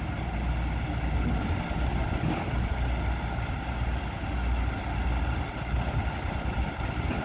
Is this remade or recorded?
recorded